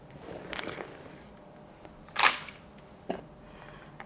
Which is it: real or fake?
fake